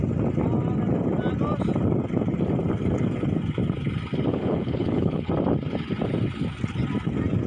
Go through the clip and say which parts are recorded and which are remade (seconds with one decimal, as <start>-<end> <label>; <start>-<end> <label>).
0.0-4.3 recorded; 4.3-5.3 remade; 5.3-7.5 recorded